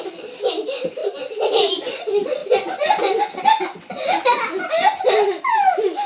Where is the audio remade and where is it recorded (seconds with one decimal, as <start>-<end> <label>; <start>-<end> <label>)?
0.0-6.1 recorded